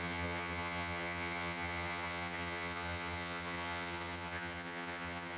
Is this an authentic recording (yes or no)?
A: no